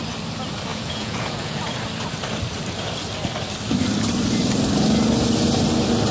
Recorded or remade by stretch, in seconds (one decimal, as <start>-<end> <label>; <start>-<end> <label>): 0.0-0.7 recorded; 0.7-1.6 remade; 1.6-6.1 recorded